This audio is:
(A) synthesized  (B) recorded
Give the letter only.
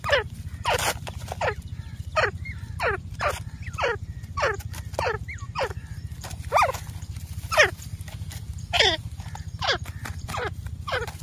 B